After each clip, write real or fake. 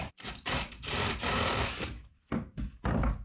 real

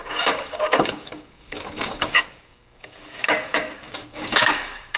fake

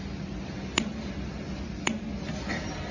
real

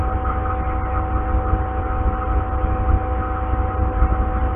real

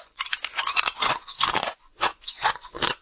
fake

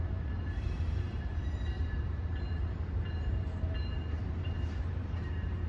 fake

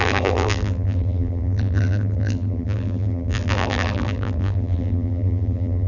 fake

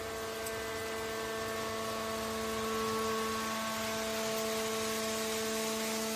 real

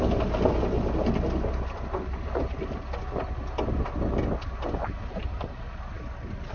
real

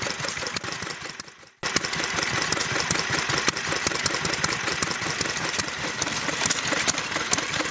real